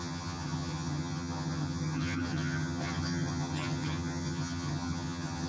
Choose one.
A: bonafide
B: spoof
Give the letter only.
B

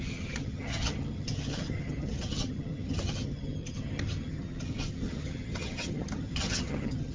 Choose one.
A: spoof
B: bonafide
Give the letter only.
A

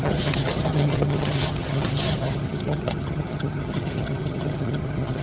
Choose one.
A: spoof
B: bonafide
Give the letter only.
A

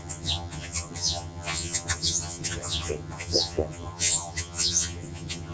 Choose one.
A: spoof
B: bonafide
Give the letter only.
A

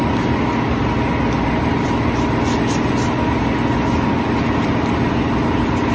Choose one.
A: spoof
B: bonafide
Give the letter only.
B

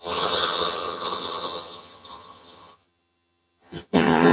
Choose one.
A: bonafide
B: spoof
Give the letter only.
B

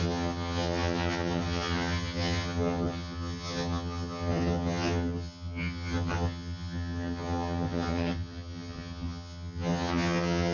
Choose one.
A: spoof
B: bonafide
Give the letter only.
A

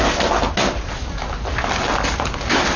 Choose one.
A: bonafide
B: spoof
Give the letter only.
A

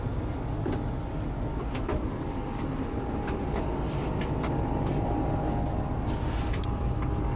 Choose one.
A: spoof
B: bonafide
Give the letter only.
B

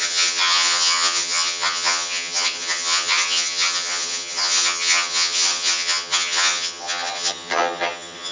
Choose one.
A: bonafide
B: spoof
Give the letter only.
B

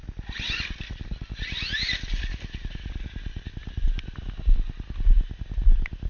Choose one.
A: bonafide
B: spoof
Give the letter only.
A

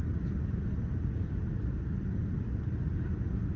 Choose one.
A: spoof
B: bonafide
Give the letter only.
B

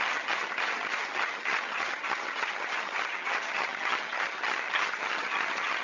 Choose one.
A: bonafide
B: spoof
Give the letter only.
B